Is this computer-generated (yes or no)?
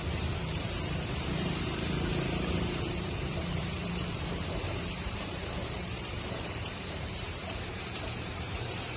yes